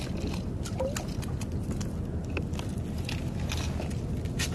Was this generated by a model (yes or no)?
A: no